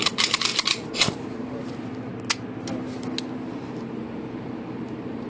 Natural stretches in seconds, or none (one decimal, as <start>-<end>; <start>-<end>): 2.1-3.5